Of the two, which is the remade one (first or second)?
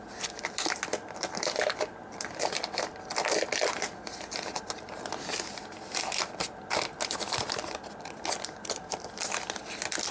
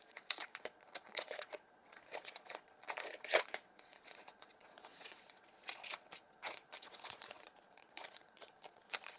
second